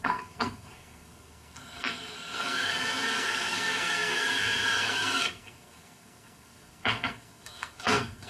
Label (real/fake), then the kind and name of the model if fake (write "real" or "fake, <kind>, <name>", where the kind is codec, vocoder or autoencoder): fake, codec, SNAC